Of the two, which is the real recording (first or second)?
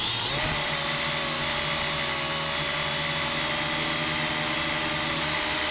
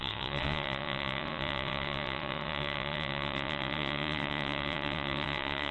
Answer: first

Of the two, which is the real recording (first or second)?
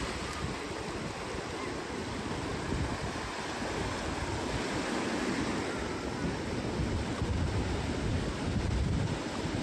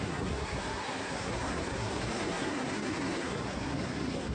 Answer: first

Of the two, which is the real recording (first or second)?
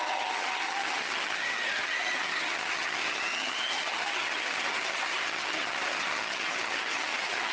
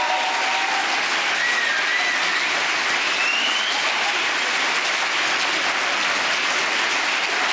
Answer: second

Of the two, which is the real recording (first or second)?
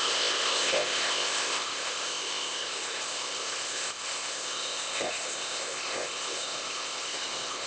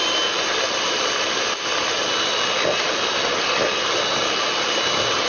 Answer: second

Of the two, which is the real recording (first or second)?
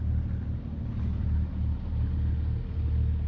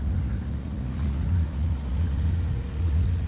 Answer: first